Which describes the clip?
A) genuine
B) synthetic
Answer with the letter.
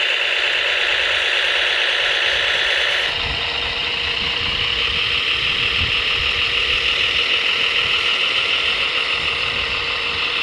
B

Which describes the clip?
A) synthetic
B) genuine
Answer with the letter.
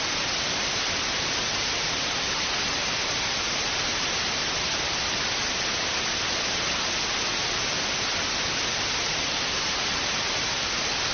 B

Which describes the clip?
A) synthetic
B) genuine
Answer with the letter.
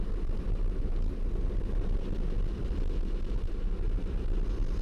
B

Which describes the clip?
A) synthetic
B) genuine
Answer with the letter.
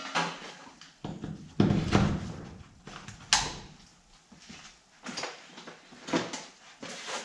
B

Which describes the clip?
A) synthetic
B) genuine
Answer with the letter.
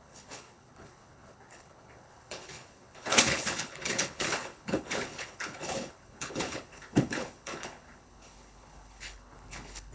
A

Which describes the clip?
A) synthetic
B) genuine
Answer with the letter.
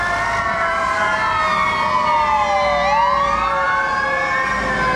B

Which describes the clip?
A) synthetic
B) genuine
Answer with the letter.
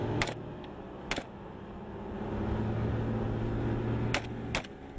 B